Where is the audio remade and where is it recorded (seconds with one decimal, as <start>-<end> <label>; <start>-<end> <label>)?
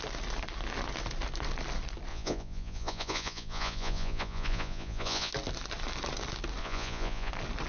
0.0-2.1 recorded; 2.1-5.3 remade; 5.3-6.6 recorded; 6.6-7.3 remade; 7.3-7.7 recorded